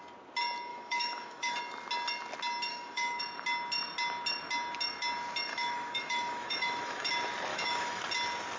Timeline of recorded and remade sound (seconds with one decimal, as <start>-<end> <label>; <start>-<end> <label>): 0.0-0.7 recorded; 0.7-1.6 remade; 1.6-2.7 recorded; 2.7-3.2 remade; 3.2-5.5 recorded; 5.5-7.1 remade; 7.1-7.5 recorded; 7.5-8.0 remade; 8.0-8.6 recorded